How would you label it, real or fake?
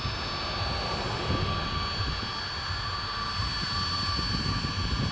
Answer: real